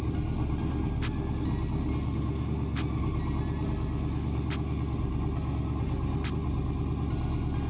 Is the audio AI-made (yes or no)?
no